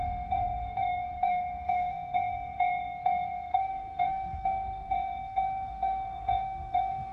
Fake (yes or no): yes